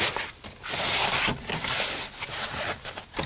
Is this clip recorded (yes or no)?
yes